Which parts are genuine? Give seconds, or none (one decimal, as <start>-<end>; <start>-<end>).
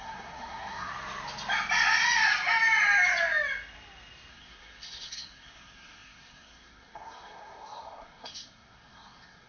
0.9-4.3